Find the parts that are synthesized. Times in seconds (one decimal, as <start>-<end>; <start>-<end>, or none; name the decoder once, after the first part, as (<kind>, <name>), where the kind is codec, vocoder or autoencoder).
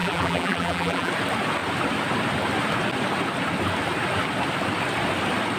0.0-1.1 (vocoder, BigVGAN v2)